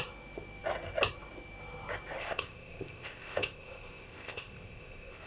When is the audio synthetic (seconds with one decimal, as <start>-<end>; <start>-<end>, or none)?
2.2-5.3